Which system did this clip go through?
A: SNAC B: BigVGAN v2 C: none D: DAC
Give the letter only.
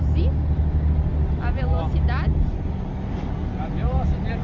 C